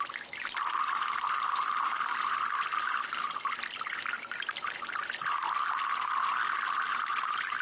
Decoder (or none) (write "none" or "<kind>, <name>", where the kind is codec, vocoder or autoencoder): vocoder, BigVGAN v2